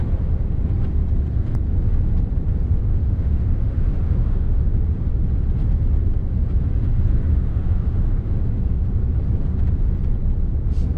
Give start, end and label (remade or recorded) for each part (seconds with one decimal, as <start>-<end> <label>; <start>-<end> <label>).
0.0-2.9 recorded; 2.9-4.8 remade; 4.8-7.3 recorded; 7.3-8.3 remade; 8.3-11.0 recorded